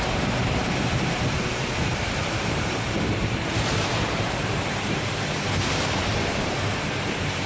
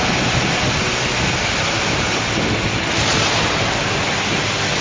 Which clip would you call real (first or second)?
second